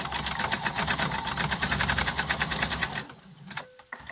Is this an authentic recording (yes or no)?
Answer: yes